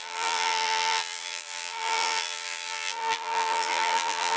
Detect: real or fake fake